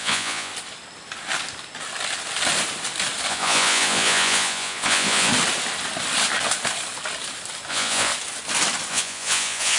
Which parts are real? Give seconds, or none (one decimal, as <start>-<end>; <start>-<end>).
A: 0.5-3.3; 5.3-7.7; 8.1-8.9